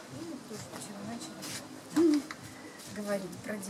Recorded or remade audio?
recorded